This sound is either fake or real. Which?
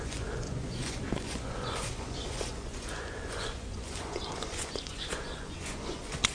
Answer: fake